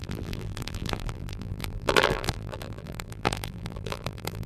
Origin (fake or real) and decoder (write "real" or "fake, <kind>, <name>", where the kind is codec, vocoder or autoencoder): fake, vocoder, BigVGAN v2